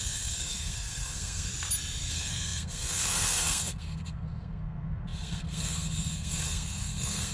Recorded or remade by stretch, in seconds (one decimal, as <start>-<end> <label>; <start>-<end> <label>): 0.0-1.5 remade; 1.5-2.1 recorded; 2.1-7.3 remade